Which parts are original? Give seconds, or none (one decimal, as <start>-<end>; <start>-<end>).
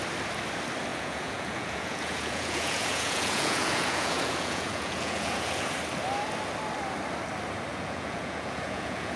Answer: 0.0-0.9; 5.7-7.7